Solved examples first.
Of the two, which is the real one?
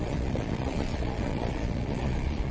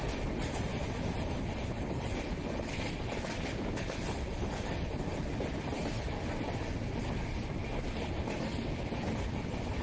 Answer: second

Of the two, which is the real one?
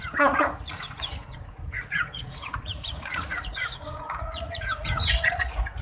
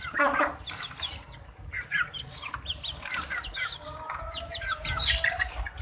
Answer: second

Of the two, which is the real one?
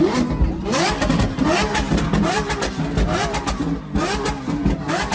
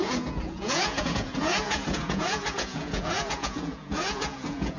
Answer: first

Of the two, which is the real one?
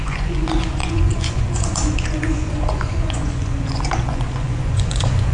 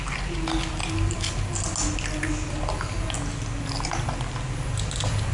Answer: second